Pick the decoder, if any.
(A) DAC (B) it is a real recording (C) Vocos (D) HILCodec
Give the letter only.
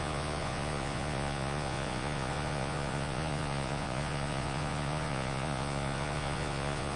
C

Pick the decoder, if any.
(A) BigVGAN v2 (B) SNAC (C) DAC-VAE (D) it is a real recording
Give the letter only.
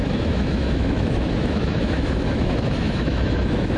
C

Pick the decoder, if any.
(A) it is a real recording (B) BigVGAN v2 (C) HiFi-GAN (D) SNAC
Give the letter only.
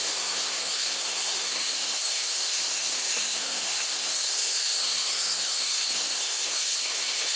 D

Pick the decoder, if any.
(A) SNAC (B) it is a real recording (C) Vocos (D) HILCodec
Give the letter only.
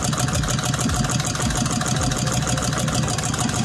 B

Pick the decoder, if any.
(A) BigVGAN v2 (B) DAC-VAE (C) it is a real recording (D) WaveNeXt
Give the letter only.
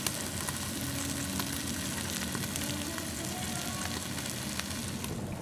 C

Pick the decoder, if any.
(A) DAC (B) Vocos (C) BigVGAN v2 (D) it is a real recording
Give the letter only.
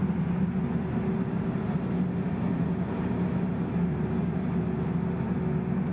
D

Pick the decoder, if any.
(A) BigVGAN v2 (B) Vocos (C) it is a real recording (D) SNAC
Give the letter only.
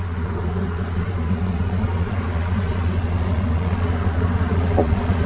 B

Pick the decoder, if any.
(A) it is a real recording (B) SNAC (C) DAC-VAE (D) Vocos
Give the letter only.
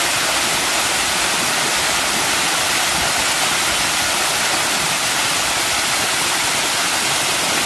A